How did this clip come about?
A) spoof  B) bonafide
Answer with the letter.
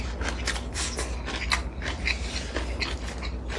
B